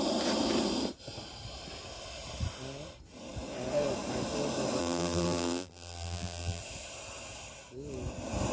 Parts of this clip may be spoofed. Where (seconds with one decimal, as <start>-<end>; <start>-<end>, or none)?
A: 4.8-6.6